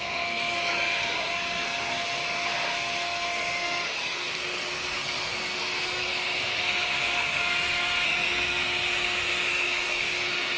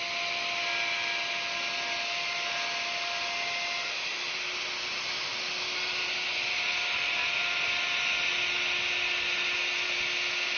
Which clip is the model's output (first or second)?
first